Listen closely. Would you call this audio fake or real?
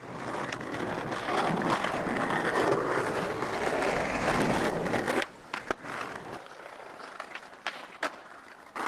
real